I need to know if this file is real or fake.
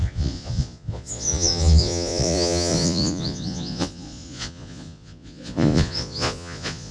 fake